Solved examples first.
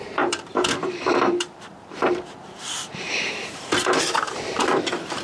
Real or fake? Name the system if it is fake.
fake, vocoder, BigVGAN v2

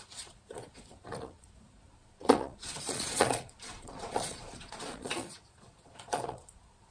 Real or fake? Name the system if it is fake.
fake, vocoder, Vocos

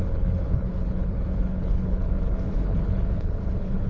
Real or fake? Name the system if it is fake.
fake, codec, HILCodec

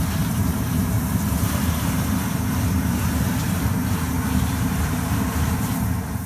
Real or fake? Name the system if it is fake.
fake, vocoder, BigVGAN v2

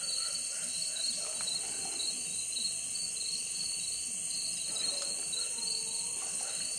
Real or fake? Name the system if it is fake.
real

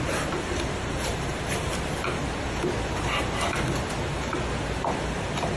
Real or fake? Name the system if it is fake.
real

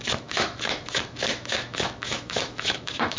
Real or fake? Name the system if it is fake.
fake, autoencoder, DAC-VAE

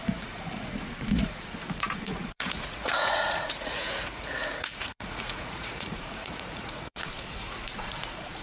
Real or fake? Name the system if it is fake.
fake, vocoder, Vocos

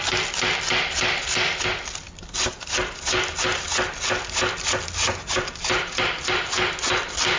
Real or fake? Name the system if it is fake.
real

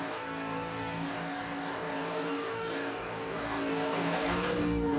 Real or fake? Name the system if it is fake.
fake, codec, DAC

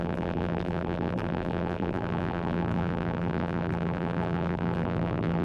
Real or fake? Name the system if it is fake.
fake, vocoder, BigVGAN v2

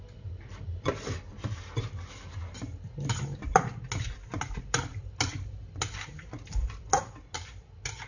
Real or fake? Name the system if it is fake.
real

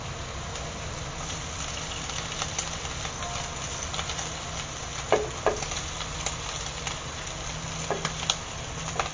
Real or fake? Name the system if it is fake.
real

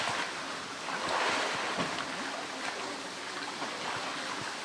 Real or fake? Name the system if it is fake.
real